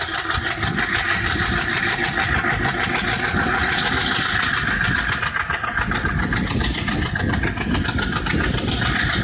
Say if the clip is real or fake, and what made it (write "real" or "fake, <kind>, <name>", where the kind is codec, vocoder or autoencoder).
real